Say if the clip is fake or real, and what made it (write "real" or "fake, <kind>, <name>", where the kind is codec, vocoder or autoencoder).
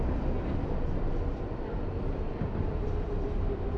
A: real